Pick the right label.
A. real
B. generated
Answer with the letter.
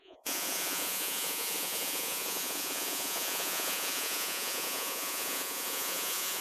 B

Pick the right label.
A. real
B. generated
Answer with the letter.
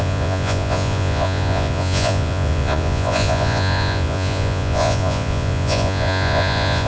B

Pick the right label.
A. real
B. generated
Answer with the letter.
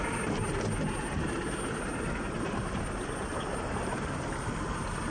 A